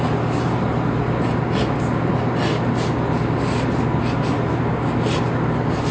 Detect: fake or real real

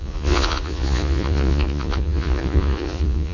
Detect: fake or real fake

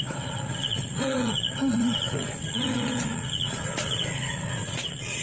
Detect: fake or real fake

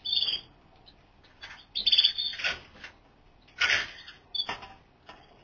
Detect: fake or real real